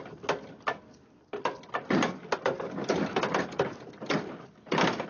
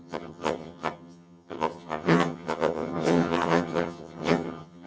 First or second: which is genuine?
first